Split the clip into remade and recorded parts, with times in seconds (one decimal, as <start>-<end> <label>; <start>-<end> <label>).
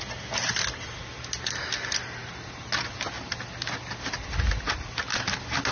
0.0-5.7 recorded